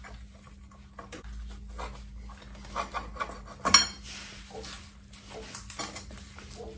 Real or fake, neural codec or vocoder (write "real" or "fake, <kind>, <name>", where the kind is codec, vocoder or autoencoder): real